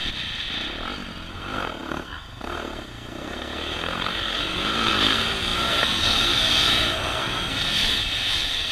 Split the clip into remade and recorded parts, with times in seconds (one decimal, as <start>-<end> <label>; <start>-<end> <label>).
0.0-1.3 recorded; 1.3-8.7 remade